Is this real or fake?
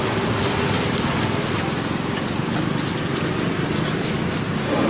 real